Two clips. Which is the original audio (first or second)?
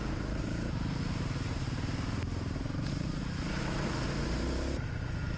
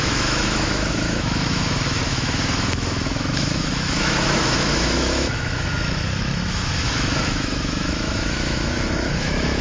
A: first